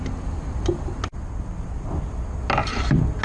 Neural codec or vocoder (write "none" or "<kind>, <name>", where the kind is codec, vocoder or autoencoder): none